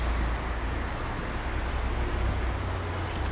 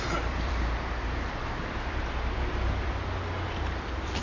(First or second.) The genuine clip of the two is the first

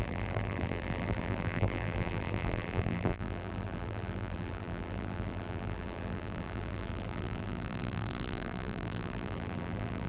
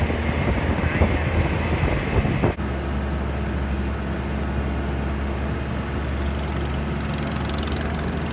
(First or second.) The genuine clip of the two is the second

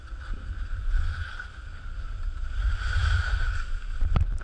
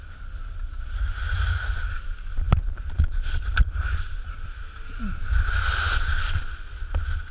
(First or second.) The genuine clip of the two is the second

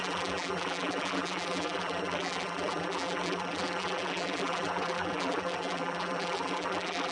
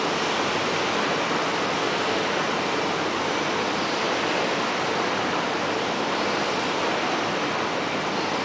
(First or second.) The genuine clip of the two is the second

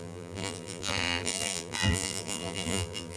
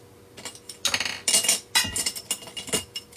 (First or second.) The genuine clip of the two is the second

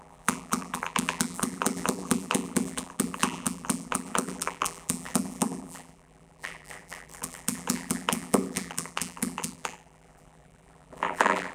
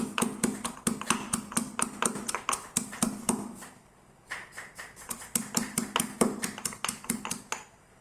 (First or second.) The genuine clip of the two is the second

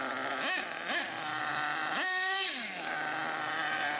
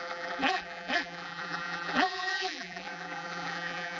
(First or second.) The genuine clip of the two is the first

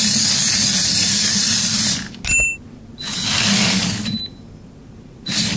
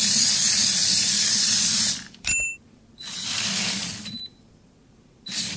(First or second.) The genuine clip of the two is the first